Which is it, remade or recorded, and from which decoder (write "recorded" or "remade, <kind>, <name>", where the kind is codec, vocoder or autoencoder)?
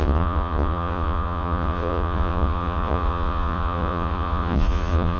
remade, vocoder, Vocos